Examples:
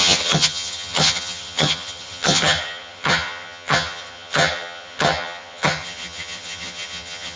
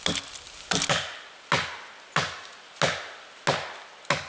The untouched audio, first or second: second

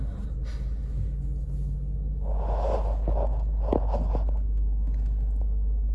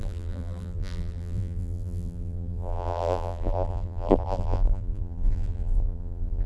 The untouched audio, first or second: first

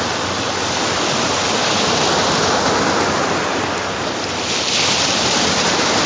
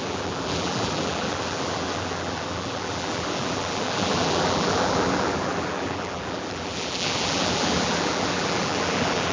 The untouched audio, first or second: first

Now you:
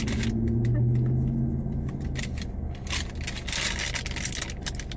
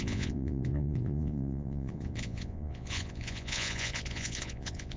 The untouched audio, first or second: first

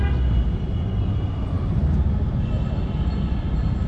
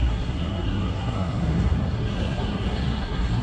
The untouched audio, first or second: first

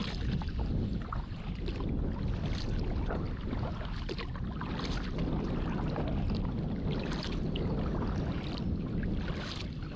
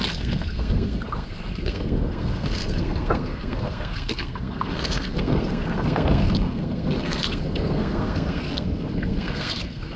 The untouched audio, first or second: first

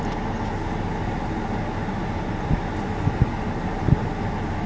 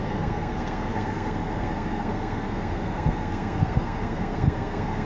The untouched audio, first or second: first